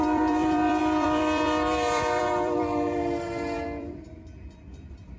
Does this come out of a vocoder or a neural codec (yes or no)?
yes